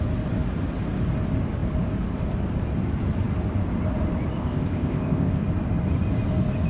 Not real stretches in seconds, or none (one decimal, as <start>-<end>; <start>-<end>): 4.4-5.4